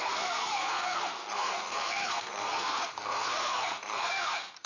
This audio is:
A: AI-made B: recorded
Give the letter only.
A